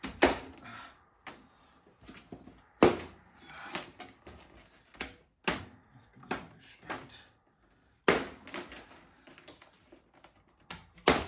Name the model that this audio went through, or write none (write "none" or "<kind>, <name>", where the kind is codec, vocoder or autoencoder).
none